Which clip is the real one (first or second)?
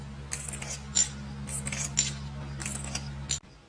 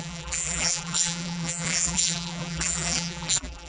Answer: first